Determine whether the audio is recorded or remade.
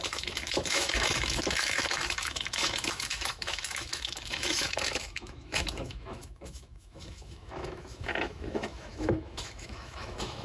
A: remade